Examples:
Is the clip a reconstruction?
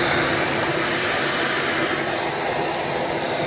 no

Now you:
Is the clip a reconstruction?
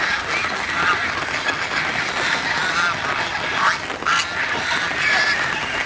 no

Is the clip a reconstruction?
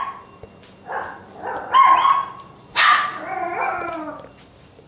no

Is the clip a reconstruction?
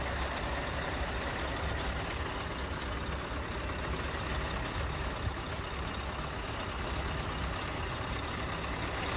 no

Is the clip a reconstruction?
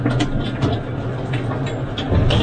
no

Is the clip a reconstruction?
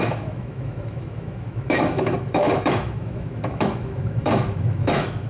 yes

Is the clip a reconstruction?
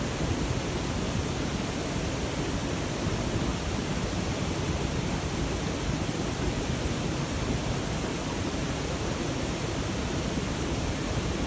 no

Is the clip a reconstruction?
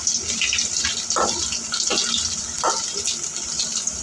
no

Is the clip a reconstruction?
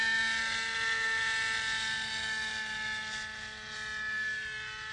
no